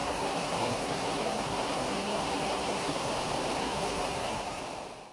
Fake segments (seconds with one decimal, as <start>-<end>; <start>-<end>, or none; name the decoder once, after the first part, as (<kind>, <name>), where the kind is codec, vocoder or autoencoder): 0.0-3.1 (codec, SNAC); 3.6-4.6